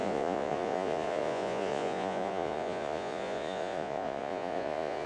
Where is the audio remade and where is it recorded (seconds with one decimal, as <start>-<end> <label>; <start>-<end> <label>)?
0.0-5.1 remade